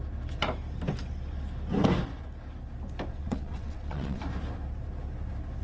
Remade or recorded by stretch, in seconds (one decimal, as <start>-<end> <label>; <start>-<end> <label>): 0.0-3.1 recorded; 3.1-4.2 remade; 4.2-5.6 recorded